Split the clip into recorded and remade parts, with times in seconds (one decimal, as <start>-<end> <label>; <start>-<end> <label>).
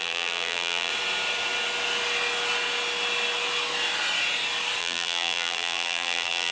0.0-0.9 remade; 0.9-4.8 recorded; 4.8-6.5 remade